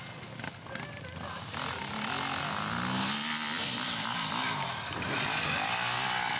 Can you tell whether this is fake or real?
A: real